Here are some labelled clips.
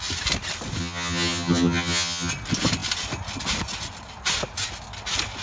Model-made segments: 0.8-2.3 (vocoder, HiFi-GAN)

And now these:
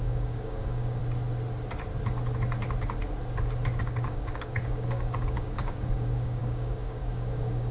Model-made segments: 0.0-1.0 (codec, DAC); 3.8-7.7

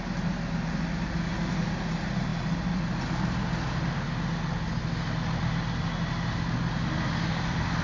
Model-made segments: none

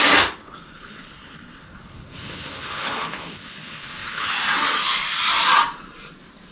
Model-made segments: 0.4-4.3 (codec, HILCodec)

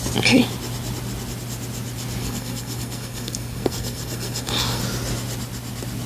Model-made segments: 2.2-4.8 (codec, SNAC)

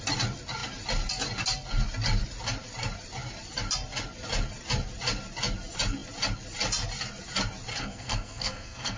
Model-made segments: 7.7-9.0 (codec, SNAC)